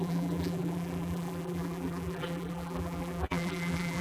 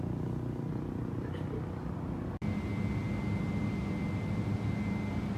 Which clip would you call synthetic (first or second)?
first